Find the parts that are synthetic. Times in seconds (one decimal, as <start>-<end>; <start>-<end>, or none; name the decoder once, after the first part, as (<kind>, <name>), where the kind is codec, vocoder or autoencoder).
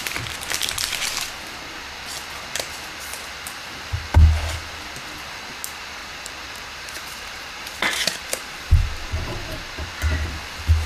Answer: 6.0-9.9 (vocoder, BigVGAN v2)